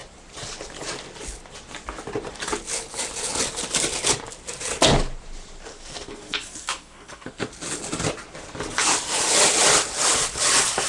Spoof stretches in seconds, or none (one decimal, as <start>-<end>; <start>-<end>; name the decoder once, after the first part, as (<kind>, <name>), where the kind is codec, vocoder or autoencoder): 5.7-7.5 (codec, SNAC)